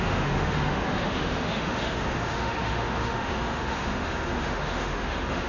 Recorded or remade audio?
remade